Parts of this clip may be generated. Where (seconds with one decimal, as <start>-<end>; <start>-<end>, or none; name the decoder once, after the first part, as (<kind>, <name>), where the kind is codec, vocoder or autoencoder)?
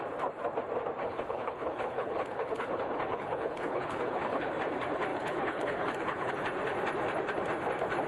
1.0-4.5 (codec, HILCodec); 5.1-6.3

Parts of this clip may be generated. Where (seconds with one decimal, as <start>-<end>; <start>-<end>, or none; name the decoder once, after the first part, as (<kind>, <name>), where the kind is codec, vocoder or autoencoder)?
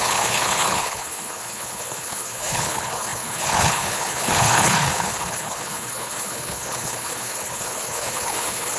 0.0-8.8 (codec, HILCodec)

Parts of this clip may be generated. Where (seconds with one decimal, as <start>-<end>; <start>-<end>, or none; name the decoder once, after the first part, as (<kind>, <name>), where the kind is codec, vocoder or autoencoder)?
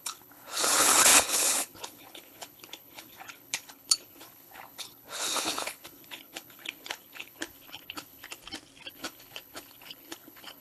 0.0-8.4 (codec, HILCodec); 8.9-10.6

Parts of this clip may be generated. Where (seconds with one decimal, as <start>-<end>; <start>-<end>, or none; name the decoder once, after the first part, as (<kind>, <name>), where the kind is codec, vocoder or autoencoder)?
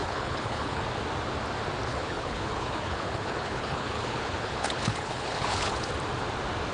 0.0-0.8 (codec, HILCodec); 1.9-5.9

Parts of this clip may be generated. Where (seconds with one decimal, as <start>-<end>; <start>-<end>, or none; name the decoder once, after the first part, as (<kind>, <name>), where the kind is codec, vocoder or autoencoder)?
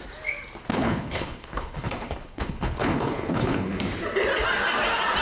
0.7-3.8 (codec, HILCodec)